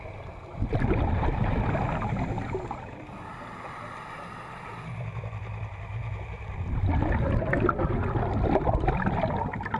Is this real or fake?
real